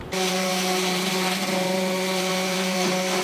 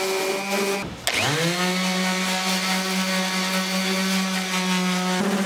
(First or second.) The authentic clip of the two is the second